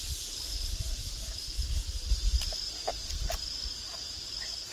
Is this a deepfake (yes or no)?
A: no